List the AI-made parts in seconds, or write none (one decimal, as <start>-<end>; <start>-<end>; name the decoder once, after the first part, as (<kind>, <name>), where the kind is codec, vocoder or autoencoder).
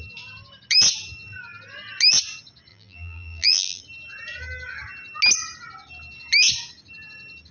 2.7-3.8 (vocoder, BigVGAN v2)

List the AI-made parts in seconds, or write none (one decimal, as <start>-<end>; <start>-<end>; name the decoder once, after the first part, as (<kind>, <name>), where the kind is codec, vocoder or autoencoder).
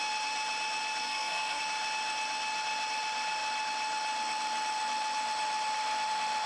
1.0-1.6 (codec, SNAC)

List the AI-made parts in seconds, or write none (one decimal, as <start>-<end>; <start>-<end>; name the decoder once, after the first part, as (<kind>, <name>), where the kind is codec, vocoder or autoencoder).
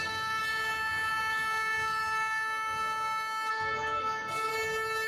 0.0-0.4 (codec, SNAC); 3.5-4.5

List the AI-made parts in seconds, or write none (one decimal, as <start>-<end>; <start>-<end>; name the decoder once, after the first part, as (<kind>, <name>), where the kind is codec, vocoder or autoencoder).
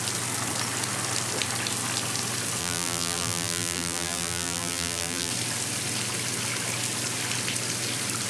2.6-5.3 (vocoder, BigVGAN v2)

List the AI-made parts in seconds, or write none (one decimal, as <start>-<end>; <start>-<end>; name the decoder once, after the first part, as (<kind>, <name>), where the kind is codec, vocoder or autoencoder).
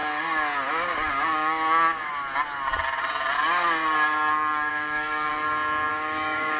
1.1-2.1 (codec, DAC); 4.7-5.3; 5.9-6.6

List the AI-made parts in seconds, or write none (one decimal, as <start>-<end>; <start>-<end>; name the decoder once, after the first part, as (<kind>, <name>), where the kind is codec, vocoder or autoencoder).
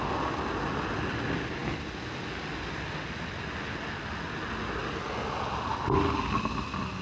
none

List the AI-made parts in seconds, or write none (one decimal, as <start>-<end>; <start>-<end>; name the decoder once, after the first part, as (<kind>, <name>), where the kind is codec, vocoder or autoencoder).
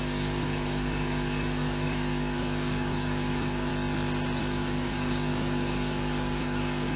0.0-3.7 (codec, DAC); 4.4-7.0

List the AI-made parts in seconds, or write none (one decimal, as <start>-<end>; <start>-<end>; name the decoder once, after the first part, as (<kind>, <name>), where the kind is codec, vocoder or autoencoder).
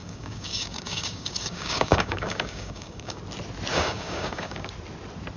0.0-3.2 (codec, DAC); 3.7-4.7